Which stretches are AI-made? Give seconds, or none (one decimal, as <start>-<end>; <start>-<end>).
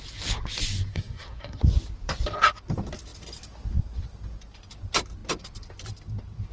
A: 0.9-1.6